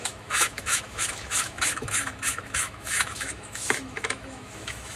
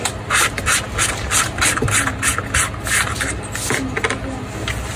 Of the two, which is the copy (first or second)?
first